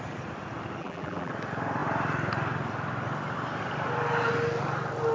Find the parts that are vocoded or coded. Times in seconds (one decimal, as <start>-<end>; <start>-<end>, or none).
0.8-1.3